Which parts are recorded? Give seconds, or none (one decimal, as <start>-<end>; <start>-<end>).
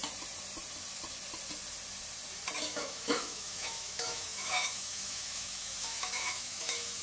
0.0-2.6